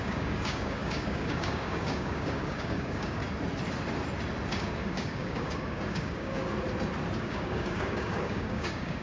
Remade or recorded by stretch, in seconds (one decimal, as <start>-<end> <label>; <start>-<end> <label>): 0.0-3.2 remade; 3.2-4.5 recorded; 4.5-6.4 remade; 6.4-7.2 recorded; 7.2-9.0 remade